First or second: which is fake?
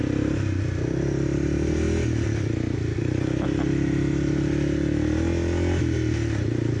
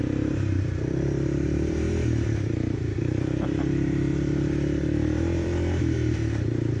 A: second